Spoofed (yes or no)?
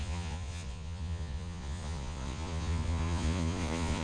yes